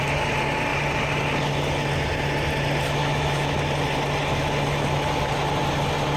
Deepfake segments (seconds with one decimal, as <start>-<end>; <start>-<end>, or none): 3.0-3.6